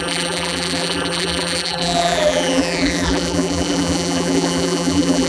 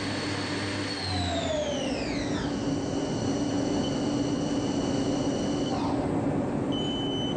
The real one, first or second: second